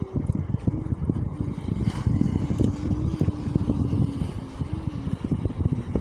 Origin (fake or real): real